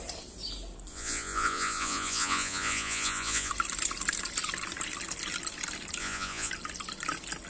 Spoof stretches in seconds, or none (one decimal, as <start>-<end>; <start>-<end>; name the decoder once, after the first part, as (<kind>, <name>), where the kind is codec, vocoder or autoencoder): 0.9-3.5 (vocoder, Vocos); 6.0-6.5